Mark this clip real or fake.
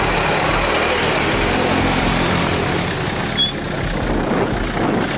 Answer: real